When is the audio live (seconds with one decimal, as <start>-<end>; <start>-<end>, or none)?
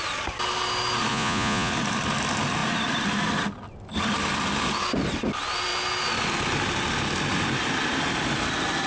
0.0-1.1; 1.7-8.9